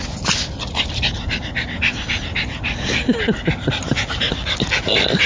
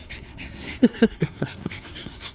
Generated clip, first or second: second